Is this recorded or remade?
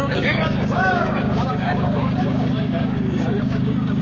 remade